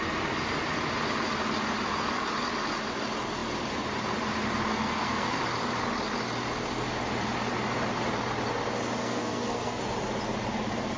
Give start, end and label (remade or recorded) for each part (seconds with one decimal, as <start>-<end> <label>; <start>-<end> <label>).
0.0-4.7 recorded; 4.7-5.4 remade; 5.4-9.0 recorded; 9.0-9.8 remade; 9.8-11.0 recorded